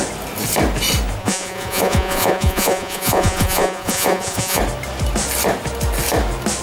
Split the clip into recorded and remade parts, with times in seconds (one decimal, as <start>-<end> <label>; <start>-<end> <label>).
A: 0.0-1.2 recorded; 1.2-4.6 remade; 4.6-6.6 recorded

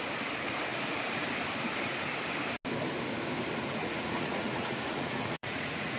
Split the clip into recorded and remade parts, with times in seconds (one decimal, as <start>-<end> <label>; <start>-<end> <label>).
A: 0.0-3.8 recorded; 3.8-6.0 remade

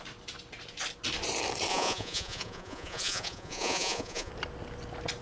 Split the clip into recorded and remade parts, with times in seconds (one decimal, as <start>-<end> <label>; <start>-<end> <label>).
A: 0.0-1.7 recorded; 1.7-4.3 remade; 4.3-5.2 recorded

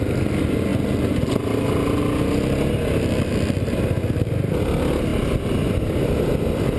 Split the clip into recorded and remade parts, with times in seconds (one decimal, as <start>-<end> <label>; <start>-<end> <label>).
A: 0.0-6.8 recorded

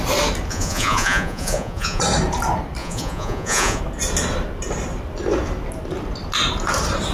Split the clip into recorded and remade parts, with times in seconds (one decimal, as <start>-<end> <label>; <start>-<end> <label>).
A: 0.0-0.5 recorded; 0.5-2.0 remade; 2.0-2.8 recorded; 2.8-3.8 remade; 3.8-7.1 recorded

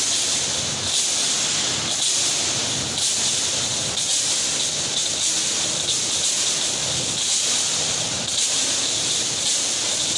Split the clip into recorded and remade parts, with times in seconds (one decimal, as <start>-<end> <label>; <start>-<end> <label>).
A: 0.0-10.2 recorded

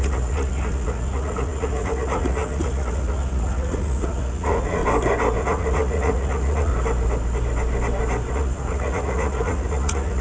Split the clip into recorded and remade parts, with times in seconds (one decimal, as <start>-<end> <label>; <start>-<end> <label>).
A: 0.0-4.8 remade; 4.8-5.4 recorded; 5.4-6.7 remade; 6.7-8.3 recorded; 8.3-10.2 remade

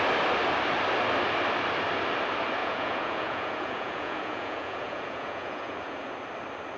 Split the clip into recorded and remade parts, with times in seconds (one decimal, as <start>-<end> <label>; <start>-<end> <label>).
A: 0.0-2.6 recorded; 2.6-6.1 remade; 6.1-6.8 recorded